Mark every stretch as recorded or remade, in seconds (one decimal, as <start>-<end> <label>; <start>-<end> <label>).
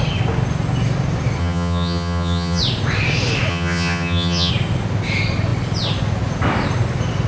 0.0-1.4 recorded; 1.4-2.6 remade; 2.6-3.5 recorded; 3.5-4.5 remade; 4.5-7.3 recorded